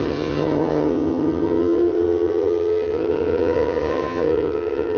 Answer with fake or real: fake